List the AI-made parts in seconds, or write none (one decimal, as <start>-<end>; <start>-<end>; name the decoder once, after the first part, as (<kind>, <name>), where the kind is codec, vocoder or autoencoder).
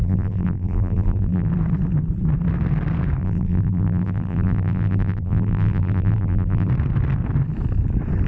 0.0-1.5 (vocoder, BigVGAN v2); 3.2-6.7